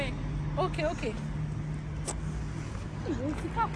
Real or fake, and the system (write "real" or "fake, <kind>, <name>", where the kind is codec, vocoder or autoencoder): real